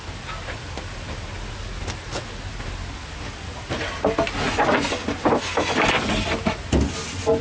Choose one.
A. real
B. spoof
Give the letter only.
A